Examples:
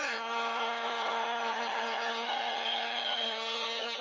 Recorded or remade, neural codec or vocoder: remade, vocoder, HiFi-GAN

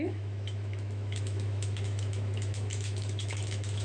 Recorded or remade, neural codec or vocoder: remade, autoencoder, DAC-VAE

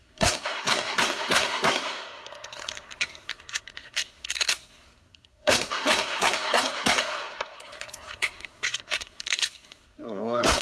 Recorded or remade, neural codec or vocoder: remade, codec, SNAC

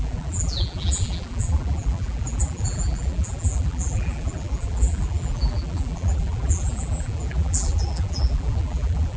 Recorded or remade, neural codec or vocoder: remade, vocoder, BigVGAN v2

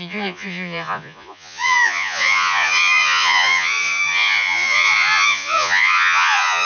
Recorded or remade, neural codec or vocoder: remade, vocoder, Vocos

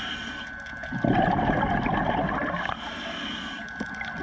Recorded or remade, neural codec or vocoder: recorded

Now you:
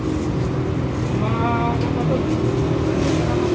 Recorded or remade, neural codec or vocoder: recorded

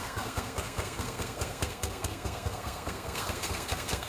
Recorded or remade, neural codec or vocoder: remade, codec, SNAC